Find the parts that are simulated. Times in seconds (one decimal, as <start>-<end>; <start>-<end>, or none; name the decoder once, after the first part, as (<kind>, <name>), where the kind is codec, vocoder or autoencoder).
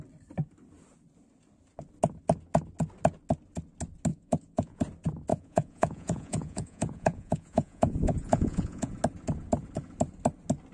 4.1-4.8 (vocoder, Vocos); 5.3-8.9